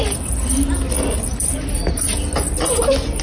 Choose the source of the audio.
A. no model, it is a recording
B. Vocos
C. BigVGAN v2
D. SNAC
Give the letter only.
A